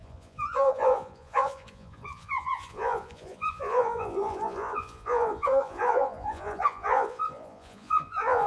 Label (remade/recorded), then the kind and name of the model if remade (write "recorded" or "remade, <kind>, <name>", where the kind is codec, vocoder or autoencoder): remade, vocoder, Vocos